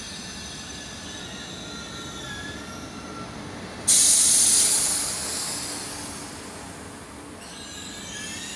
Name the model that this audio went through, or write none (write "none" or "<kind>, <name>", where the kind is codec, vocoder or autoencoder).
none